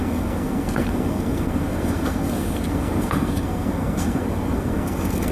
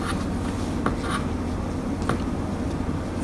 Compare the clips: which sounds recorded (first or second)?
second